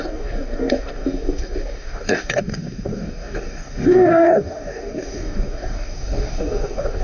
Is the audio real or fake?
fake